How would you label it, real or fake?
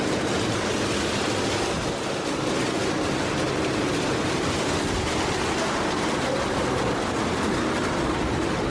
real